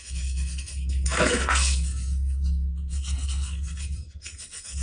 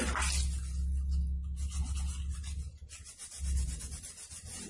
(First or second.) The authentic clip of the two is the second